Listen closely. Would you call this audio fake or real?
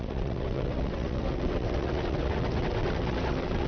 fake